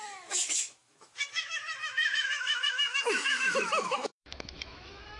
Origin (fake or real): fake